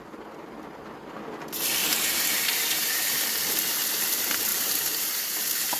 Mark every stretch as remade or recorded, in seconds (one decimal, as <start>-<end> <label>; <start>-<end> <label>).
0.0-1.8 recorded; 1.8-3.2 remade; 3.2-4.5 recorded; 4.5-5.8 remade